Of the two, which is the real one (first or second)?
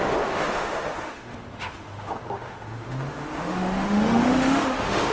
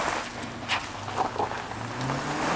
second